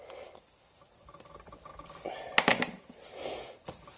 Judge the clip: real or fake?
real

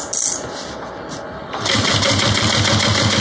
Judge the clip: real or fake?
real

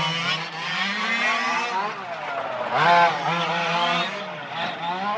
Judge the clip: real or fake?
real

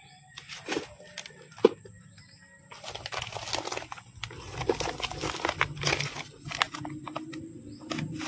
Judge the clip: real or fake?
real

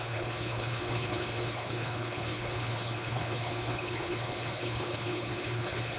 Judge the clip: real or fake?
fake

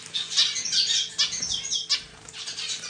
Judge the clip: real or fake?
real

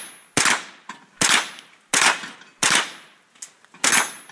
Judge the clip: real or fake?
real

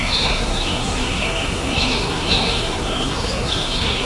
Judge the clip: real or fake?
fake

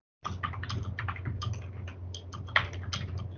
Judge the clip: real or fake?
real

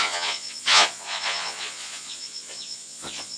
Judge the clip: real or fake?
fake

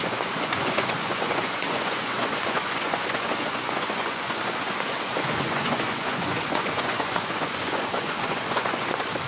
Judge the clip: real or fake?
fake